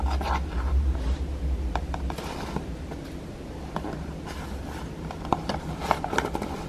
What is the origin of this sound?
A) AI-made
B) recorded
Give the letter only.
B